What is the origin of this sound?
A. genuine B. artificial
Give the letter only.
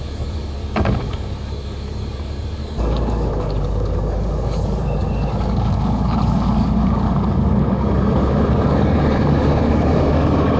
B